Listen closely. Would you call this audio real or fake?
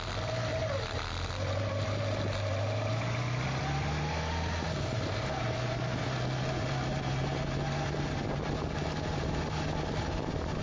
real